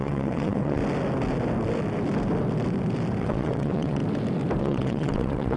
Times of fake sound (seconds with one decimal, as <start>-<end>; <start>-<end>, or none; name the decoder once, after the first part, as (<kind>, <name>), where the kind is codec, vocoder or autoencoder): 0.0-0.8 (vocoder, WaveNeXt); 3.2-4.0; 4.6-5.6